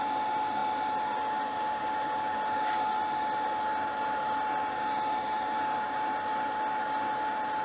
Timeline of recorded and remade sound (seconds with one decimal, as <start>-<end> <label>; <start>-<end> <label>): 0.0-7.6 recorded